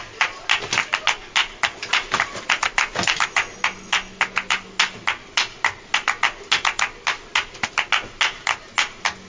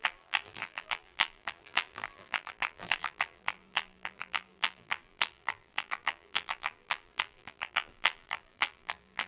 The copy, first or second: second